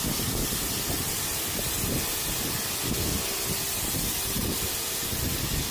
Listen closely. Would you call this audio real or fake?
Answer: real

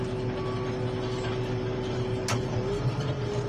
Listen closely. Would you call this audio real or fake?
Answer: real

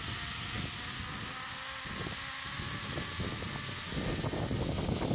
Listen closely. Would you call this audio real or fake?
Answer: real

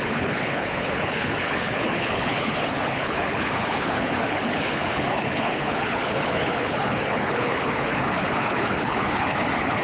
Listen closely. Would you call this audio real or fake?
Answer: fake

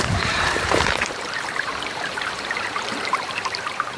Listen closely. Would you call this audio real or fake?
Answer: fake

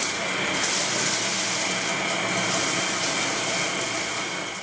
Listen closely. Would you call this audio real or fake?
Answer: real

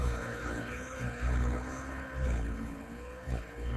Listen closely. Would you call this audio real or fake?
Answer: fake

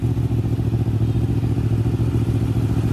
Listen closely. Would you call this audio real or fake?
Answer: real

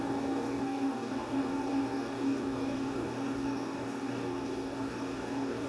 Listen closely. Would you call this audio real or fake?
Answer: fake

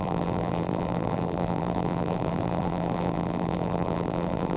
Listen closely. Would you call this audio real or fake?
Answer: fake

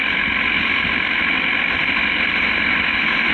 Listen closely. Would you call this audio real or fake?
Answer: real